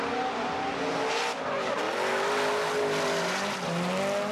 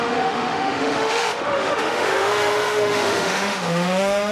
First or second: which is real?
first